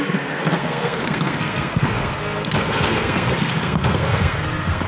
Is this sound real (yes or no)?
no